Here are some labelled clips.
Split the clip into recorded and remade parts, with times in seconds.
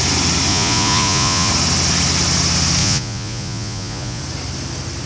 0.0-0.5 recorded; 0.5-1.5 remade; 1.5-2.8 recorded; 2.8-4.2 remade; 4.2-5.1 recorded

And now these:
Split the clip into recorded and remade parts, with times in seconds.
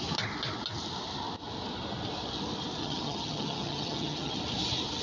0.0-2.8 recorded; 2.8-4.4 remade; 4.4-5.0 recorded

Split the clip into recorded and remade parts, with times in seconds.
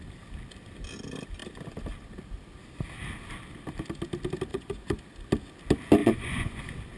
0.0-4.5 recorded; 4.5-5.0 remade; 5.0-6.0 recorded; 6.0-6.6 remade; 6.6-7.0 recorded